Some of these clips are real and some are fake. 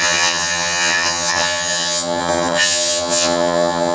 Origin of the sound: fake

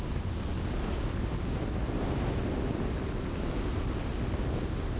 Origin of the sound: real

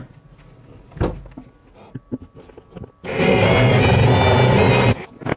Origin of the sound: real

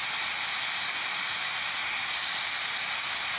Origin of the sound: real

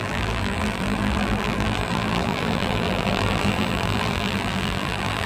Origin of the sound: fake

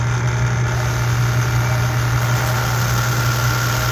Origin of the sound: real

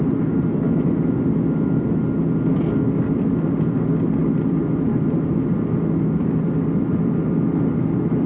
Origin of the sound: real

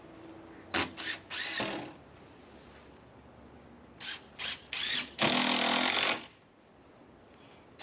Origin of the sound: real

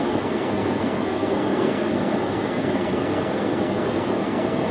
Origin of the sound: fake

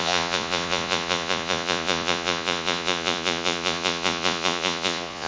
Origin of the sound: fake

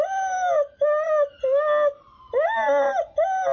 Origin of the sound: real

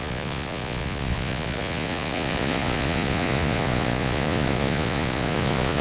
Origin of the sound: fake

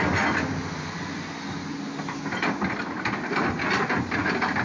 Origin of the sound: real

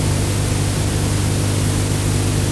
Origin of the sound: real